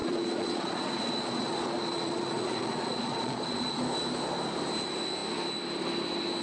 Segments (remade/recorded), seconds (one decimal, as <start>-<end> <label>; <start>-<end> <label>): 0.0-3.8 remade; 3.8-6.4 recorded